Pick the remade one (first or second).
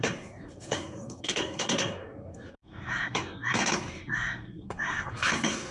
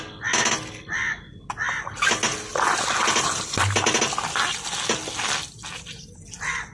first